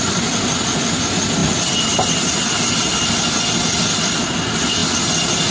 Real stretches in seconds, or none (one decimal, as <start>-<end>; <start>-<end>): 0.0-5.5